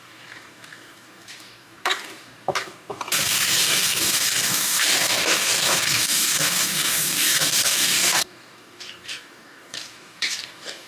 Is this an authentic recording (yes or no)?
no